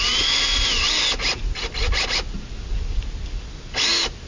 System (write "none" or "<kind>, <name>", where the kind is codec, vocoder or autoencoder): none